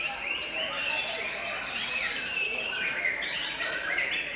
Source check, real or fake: fake